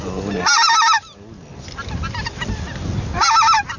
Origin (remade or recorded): recorded